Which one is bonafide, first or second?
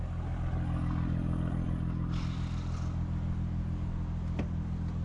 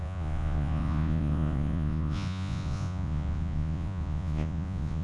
first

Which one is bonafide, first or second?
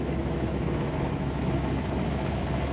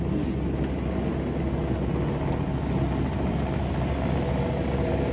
second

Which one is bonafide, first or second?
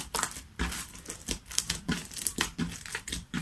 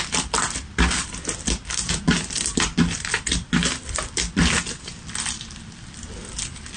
second